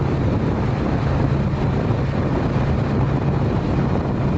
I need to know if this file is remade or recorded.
recorded